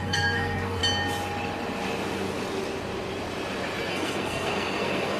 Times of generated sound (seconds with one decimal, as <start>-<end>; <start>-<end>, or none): 0.0-0.8; 3.9-5.2